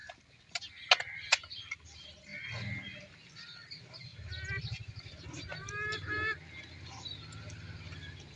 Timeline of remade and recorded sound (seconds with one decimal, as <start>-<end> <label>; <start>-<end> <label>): 0.0-8.4 recorded